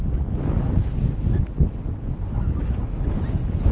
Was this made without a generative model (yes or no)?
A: yes